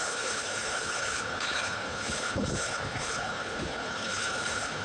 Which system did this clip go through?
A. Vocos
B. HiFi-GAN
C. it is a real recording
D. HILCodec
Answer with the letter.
D